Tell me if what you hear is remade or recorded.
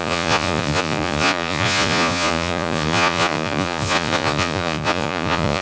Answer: remade